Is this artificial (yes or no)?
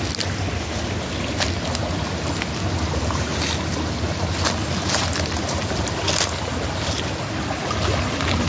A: no